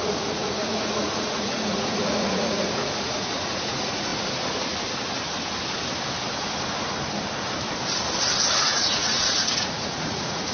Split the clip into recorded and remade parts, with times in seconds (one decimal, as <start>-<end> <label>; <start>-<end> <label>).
0.0-4.1 remade; 4.1-8.6 recorded; 8.6-10.5 remade